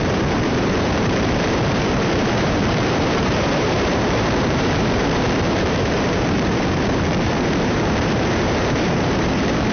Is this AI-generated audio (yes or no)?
yes